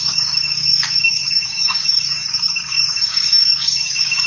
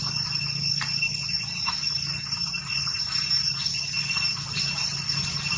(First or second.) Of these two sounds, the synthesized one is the first